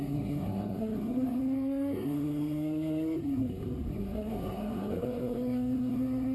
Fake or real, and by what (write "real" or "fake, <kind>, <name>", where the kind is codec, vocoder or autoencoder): fake, codec, SNAC